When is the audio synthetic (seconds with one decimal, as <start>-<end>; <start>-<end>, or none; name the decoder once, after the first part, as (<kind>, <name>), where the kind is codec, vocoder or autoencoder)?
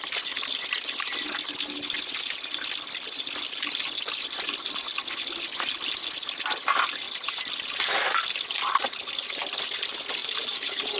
10.2-11.0 (vocoder, BigVGAN v2)